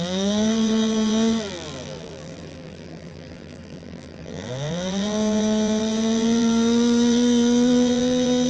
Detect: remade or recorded remade